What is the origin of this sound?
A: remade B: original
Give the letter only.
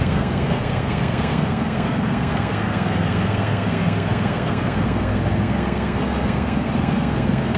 A